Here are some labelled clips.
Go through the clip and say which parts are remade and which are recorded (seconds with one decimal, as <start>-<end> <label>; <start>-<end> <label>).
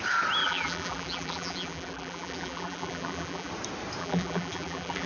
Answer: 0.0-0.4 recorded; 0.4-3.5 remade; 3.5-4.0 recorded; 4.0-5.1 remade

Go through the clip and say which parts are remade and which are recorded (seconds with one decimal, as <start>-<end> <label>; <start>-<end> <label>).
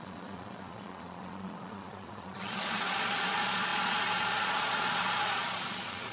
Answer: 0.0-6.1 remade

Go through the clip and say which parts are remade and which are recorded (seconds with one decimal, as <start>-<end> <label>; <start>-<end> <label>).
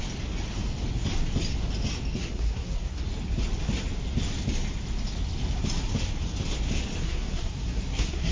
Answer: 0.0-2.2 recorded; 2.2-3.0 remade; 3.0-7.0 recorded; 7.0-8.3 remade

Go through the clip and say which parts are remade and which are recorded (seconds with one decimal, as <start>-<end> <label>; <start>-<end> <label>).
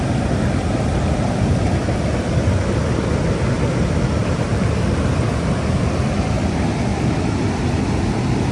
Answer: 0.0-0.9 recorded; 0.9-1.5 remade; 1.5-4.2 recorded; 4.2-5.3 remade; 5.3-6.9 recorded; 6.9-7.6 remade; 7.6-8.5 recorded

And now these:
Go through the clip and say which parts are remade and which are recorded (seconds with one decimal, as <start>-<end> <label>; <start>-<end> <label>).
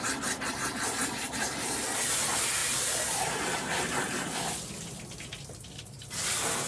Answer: 0.0-6.7 recorded